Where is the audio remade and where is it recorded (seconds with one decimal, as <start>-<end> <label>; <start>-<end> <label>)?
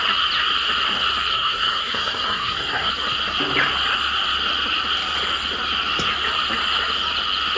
0.0-1.3 recorded; 1.3-2.9 remade; 2.9-7.6 recorded